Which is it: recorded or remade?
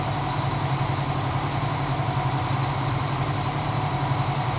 remade